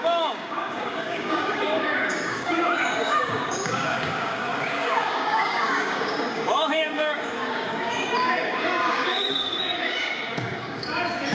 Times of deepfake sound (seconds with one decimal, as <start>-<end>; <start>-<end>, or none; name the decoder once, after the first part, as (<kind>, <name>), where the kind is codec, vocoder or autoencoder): 0.0-11.3 (codec, DAC)